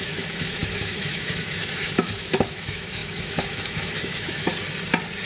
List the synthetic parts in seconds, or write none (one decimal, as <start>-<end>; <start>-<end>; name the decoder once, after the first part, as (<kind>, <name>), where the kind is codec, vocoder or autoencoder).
0.0-4.5 (autoencoder, DAC-VAE)